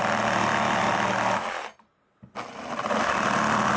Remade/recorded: recorded